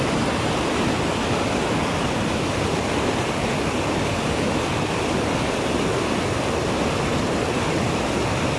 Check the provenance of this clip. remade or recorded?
recorded